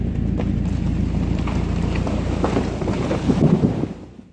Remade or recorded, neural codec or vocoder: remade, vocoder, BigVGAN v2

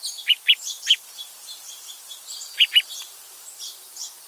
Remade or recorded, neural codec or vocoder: remade, vocoder, BigVGAN v2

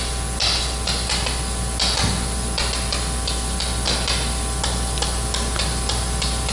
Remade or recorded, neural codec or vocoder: recorded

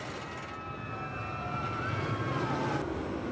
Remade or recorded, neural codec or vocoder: recorded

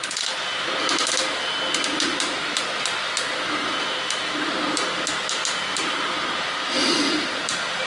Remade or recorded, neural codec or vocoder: recorded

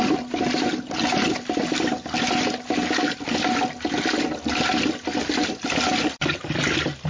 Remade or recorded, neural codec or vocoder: recorded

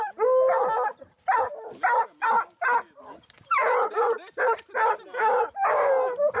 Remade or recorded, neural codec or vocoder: recorded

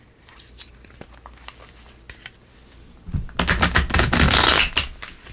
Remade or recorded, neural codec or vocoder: recorded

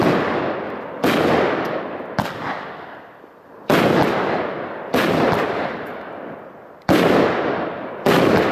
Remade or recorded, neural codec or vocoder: recorded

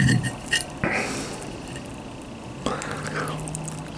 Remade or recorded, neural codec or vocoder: recorded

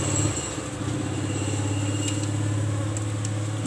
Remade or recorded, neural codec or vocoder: recorded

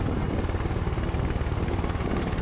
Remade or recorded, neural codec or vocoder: recorded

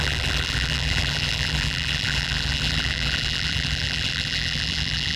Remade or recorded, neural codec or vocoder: remade, vocoder, BigVGAN v2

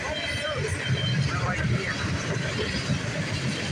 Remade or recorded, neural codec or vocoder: remade, vocoder, BigVGAN v2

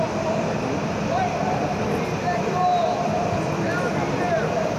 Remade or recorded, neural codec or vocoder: remade, vocoder, BigVGAN v2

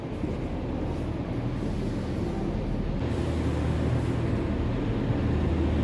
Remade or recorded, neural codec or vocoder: recorded